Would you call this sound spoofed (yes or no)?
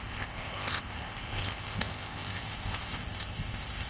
yes